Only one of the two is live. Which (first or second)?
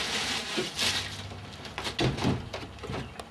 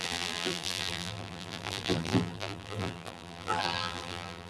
first